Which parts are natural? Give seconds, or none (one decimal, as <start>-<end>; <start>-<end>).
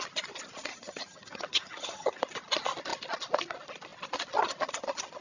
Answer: 0.0-0.7; 2.2-5.2